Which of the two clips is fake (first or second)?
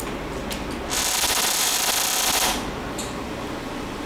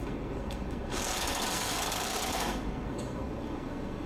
second